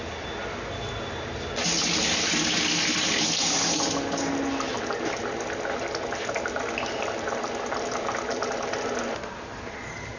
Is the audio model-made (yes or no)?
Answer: no